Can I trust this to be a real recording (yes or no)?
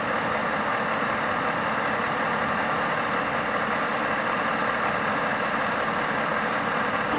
no